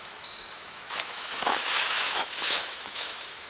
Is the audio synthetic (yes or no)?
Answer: yes